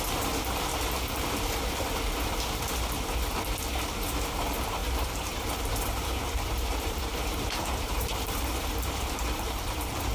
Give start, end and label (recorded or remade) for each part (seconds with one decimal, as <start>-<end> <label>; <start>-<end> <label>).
0.0-4.8 recorded; 4.8-10.1 remade